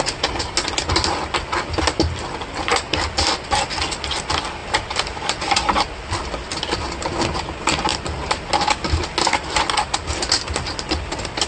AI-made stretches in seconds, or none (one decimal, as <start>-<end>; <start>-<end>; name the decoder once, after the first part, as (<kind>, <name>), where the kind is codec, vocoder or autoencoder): 4.6-5.8 (vocoder, BigVGAN v2)